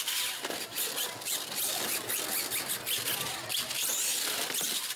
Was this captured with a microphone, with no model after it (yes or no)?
yes